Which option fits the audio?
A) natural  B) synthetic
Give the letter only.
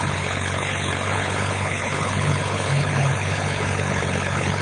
B